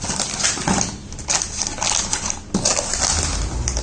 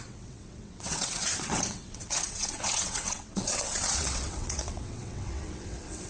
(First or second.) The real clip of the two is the first